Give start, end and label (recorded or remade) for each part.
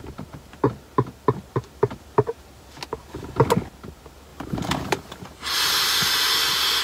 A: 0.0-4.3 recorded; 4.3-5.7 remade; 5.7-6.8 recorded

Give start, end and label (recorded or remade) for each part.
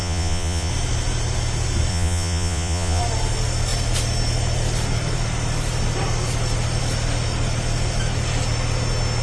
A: 0.0-0.7 remade; 0.7-1.9 recorded; 1.9-3.0 remade; 3.0-9.2 recorded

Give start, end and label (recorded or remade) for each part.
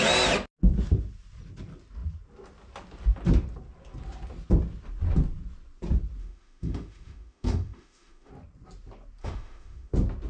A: 0.0-6.2 recorded; 6.2-8.3 remade; 8.3-9.2 recorded; 9.2-9.9 remade; 9.9-10.3 recorded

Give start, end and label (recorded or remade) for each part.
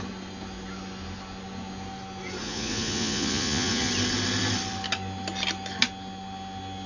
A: 0.0-2.4 recorded; 2.4-3.9 remade; 3.9-6.9 recorded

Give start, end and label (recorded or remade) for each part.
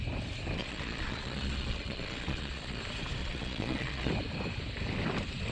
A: 0.0-0.6 recorded; 0.6-2.8 remade; 2.8-3.2 recorded; 3.2-4.1 remade; 4.1-5.5 recorded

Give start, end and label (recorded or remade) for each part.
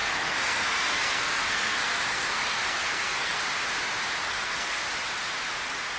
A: 0.0-3.4 remade; 3.4-4.2 recorded; 4.2-4.8 remade; 4.8-6.0 recorded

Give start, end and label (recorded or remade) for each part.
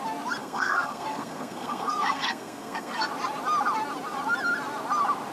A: 0.0-0.4 recorded; 0.4-3.1 remade; 3.1-5.3 recorded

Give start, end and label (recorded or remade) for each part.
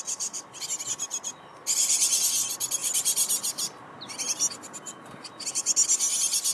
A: 0.0-6.5 recorded